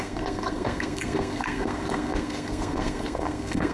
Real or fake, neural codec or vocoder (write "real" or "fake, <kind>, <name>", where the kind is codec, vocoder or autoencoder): fake, codec, SNAC